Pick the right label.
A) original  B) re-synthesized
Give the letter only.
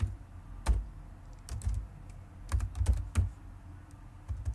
A